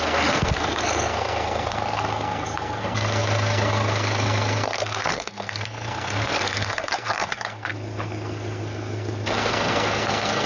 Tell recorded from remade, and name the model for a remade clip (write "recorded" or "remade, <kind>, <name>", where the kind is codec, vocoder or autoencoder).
remade, codec, SNAC